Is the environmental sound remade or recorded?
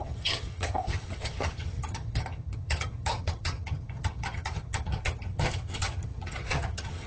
remade